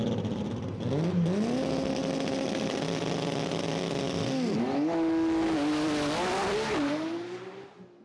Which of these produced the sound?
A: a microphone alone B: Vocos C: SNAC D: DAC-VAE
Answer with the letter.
A